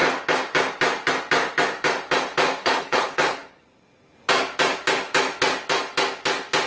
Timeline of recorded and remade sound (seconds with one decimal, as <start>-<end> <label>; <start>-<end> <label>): 0.0-2.6 recorded; 2.6-3.6 remade; 3.6-6.7 recorded